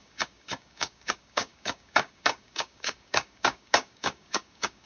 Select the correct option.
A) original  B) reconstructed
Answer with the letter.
B